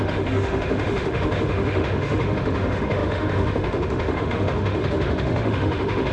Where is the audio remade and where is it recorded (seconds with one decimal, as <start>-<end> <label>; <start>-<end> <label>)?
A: 0.0-6.1 remade